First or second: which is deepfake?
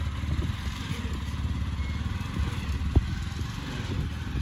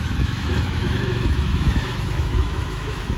second